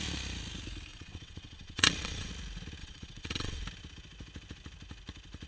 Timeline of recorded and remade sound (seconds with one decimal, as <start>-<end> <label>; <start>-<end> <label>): 0.0-0.9 recorded; 0.9-2.3 remade; 2.3-2.8 recorded; 2.8-3.6 remade; 3.6-5.5 recorded